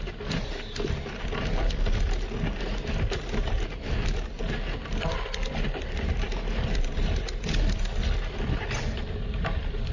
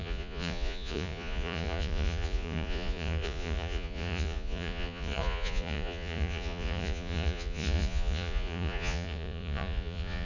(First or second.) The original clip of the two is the first